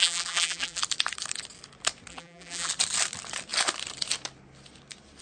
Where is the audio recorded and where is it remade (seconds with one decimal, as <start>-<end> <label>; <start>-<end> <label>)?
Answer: 0.0-0.8 remade; 0.8-2.1 recorded; 2.1-2.7 remade; 2.7-5.2 recorded